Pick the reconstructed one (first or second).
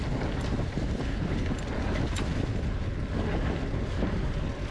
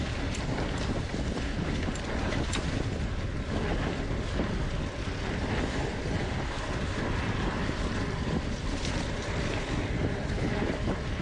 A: second